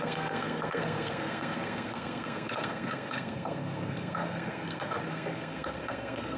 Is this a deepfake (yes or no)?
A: yes